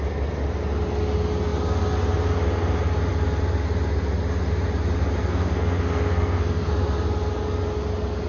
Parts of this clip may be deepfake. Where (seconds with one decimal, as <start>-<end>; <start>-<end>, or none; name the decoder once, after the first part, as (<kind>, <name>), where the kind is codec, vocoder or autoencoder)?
5.2-6.7 (codec, SNAC)